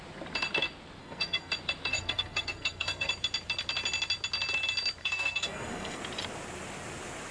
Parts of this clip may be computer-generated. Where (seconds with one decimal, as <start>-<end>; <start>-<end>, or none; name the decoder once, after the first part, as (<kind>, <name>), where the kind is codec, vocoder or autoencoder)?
1.0-1.5 (codec, SNAC); 1.9-3.1; 5.0-6.0